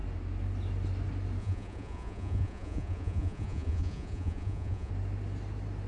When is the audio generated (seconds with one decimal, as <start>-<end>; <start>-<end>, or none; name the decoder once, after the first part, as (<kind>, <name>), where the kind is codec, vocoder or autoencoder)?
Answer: 1.4-4.9 (vocoder, Vocos)